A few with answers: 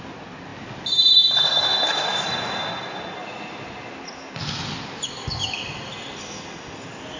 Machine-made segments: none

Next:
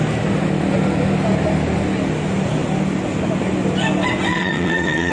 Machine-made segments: 4.3-5.1 (vocoder, WaveNeXt)

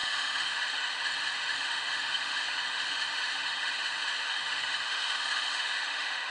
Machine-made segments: 0.0-6.3 (autoencoder, DAC-VAE)

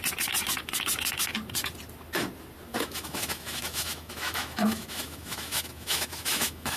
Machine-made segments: 2.7-6.8 (autoencoder, DAC-VAE)

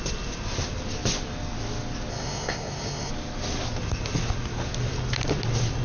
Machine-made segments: 2.1-3.1 (codec, SNAC)